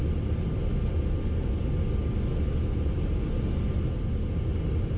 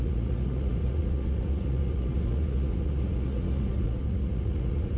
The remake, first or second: second